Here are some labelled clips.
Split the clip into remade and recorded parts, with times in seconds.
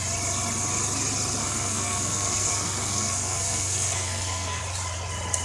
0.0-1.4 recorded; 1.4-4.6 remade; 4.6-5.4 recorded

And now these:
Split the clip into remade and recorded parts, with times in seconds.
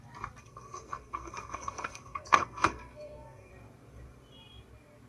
0.0-0.4 recorded; 0.4-3.5 remade; 3.5-5.1 recorded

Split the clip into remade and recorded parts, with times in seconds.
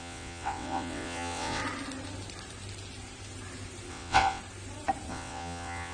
0.0-1.6 remade; 1.6-3.9 recorded; 3.9-4.4 remade; 4.4-5.1 recorded; 5.1-5.9 remade